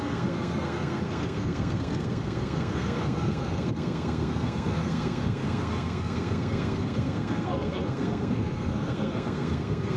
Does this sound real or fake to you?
fake